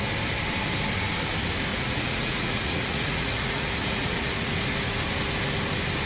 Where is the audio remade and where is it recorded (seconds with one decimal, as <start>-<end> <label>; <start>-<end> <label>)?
0.0-1.7 recorded; 1.7-4.5 remade; 4.5-6.1 recorded